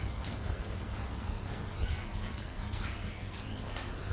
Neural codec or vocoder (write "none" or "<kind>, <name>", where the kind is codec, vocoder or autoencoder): codec, SNAC